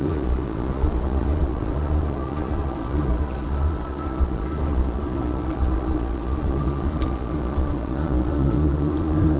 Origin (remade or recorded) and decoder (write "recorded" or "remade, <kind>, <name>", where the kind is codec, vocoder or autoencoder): remade, vocoder, Vocos